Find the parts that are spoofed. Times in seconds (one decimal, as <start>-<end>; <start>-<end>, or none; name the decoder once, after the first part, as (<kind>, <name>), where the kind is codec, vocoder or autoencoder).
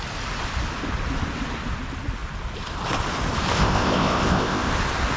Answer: 3.5-4.7 (codec, ZipCodec)